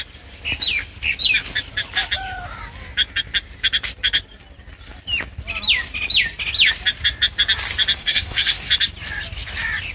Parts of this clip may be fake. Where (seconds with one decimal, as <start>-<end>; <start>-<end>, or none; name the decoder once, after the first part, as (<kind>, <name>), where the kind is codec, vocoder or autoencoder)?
8.0-8.7 (codec, SNAC)